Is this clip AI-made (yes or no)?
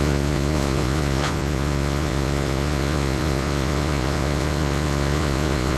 yes